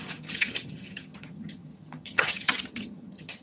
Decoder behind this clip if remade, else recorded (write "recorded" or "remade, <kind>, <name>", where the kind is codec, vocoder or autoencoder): remade, vocoder, HiFi-GAN